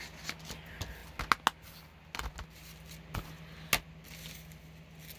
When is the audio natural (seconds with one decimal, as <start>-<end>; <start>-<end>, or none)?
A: 0.0-5.2